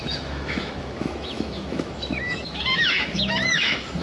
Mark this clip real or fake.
fake